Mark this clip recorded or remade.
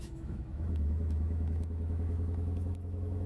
remade